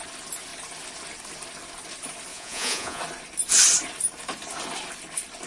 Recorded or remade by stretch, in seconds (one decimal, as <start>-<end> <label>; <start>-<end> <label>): 0.0-2.3 recorded; 2.3-3.0 remade; 3.0-5.5 recorded